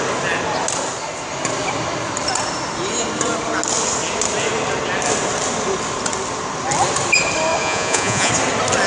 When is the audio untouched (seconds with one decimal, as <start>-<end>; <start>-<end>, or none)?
0.0-7.6; 8.3-8.9